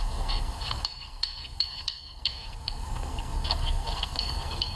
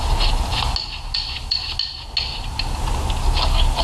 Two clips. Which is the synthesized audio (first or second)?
first